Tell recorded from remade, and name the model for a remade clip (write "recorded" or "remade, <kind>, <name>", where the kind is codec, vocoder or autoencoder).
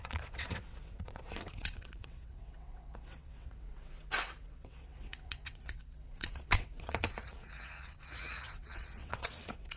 remade, vocoder, WaveNeXt